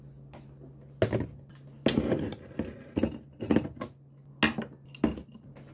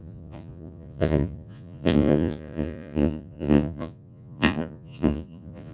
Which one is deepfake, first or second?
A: second